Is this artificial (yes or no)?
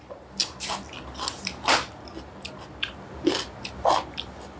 no